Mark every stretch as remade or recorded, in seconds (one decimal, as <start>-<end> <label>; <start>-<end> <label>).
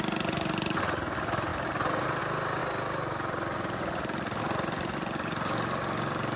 0.0-6.4 recorded